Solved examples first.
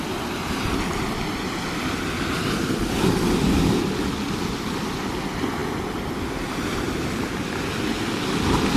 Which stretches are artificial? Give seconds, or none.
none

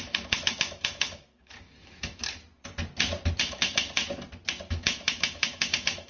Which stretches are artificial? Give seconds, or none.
0.0-2.4 (autoencoder, DAC-VAE); 3.4-4.0; 4.7-6.1

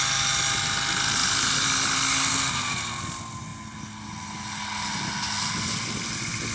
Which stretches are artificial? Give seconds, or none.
none

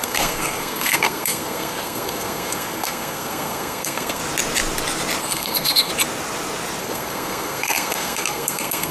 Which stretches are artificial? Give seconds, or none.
0.0-4.2 (codec, SNAC); 5.2-5.9; 6.8-8.9

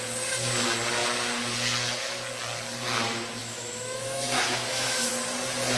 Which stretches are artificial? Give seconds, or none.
3.4-5.1 (autoencoder, DAC-VAE)

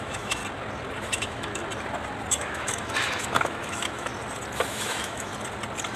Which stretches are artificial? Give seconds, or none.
0.0-0.4 (autoencoder, DAC-VAE); 1.0-1.6; 2.3-4.1; 4.7-5.3

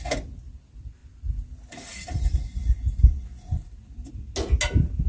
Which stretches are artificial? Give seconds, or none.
none

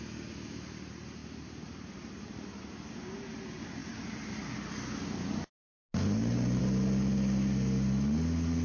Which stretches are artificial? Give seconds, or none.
none